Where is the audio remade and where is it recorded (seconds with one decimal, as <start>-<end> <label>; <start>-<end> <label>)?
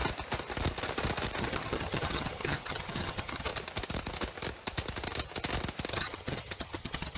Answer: 0.0-1.4 recorded; 1.4-3.5 remade; 3.5-5.9 recorded; 5.9-7.2 remade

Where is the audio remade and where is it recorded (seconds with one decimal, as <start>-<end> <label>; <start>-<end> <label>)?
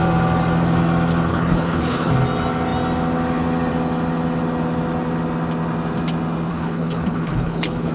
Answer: 0.0-1.3 recorded; 1.3-2.1 remade; 2.1-6.5 recorded; 6.5-7.9 remade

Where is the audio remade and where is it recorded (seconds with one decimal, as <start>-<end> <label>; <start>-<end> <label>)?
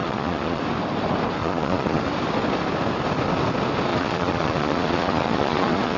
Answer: 0.0-0.6 remade; 0.6-1.4 recorded; 1.4-2.0 remade; 2.0-3.9 recorded; 3.9-6.0 remade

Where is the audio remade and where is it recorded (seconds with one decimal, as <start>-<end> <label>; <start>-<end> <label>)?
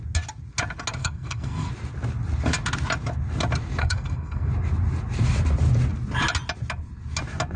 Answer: 0.0-1.0 recorded; 1.0-1.7 remade; 1.7-3.8 recorded; 3.8-4.5 remade; 4.5-7.6 recorded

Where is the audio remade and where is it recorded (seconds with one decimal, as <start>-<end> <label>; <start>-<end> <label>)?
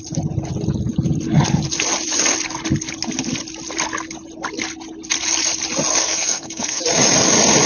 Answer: 0.0-6.0 recorded; 6.0-6.8 remade; 6.8-7.7 recorded